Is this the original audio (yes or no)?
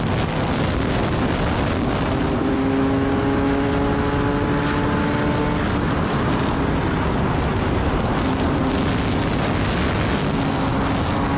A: yes